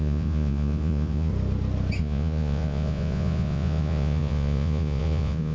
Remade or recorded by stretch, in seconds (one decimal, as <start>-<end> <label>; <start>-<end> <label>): 0.0-1.3 remade; 1.3-2.0 recorded; 2.0-5.5 remade